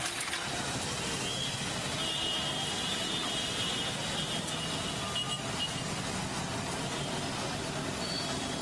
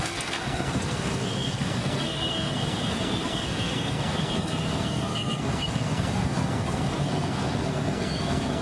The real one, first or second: first